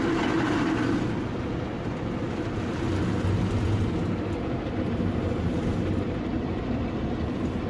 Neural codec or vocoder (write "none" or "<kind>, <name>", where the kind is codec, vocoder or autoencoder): none